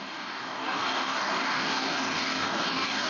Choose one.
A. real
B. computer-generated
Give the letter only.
B